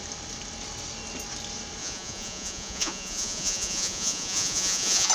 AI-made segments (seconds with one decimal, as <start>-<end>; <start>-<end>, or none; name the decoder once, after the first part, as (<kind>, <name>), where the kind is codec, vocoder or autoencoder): 1.8-5.1 (vocoder, Vocos)